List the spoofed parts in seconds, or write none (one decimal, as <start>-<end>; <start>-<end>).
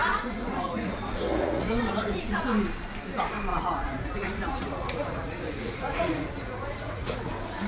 0.0-2.4; 3.5-7.3